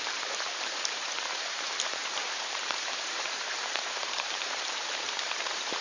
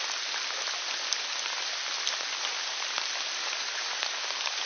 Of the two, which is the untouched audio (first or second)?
second